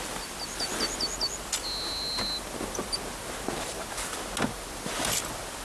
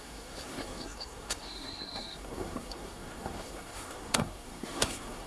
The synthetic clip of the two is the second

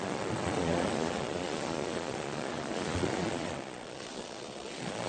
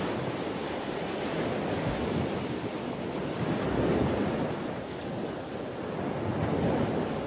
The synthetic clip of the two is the first